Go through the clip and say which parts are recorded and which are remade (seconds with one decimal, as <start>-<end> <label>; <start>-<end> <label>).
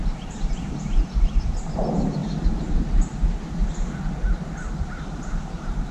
0.0-2.2 remade; 2.2-2.7 recorded; 2.7-3.6 remade; 3.6-5.0 recorded; 5.0-5.9 remade